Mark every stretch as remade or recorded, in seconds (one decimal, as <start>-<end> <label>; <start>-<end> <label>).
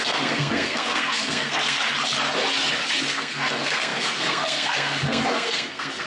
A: 0.0-1.8 remade; 1.8-3.0 recorded; 3.0-6.1 remade